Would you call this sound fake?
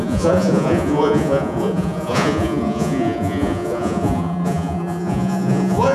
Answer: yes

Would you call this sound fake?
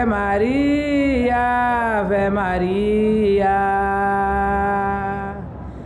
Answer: no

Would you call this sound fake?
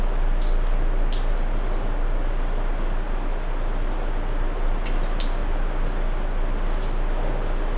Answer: no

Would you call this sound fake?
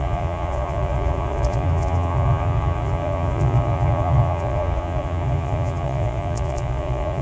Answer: yes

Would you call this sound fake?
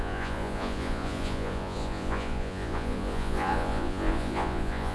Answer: yes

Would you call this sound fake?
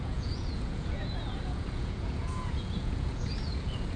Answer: yes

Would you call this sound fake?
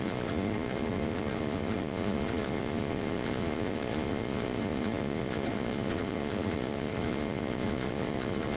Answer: yes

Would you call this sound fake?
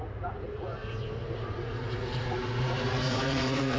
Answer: yes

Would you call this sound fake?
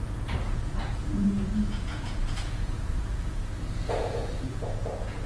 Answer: yes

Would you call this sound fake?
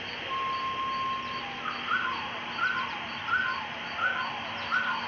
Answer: no